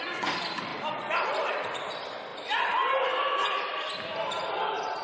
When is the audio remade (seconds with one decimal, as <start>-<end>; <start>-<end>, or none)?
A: none